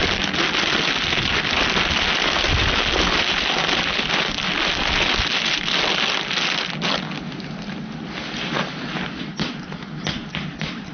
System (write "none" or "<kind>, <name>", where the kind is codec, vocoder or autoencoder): none